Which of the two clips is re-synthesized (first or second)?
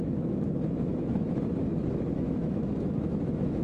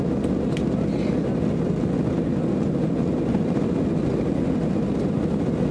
first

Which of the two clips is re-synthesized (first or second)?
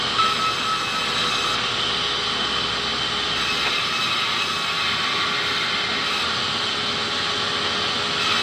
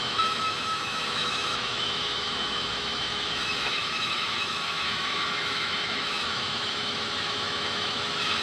second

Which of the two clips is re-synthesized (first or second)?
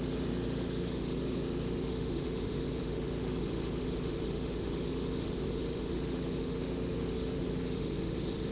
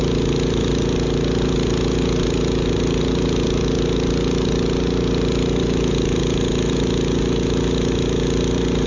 first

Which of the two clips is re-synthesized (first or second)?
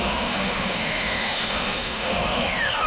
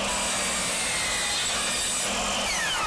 first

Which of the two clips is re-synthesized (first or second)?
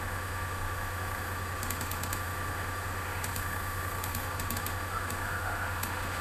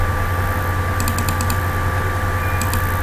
first